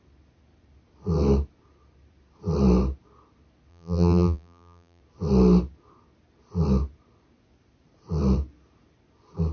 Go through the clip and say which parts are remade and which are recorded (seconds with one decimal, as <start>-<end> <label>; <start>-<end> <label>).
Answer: 0.0-3.7 recorded; 3.7-5.0 remade; 5.0-9.5 recorded